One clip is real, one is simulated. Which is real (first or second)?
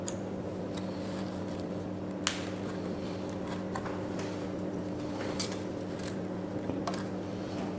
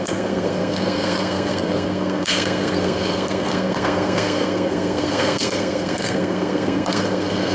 first